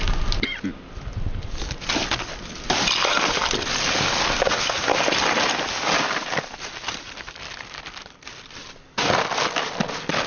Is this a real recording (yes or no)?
yes